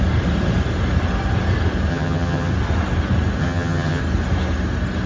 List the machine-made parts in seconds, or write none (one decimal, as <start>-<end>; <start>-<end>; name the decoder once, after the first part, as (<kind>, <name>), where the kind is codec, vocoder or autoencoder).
1.9-2.5 (vocoder, HiFi-GAN); 3.4-4.0